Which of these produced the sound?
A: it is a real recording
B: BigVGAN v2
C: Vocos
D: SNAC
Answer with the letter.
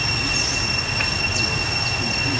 A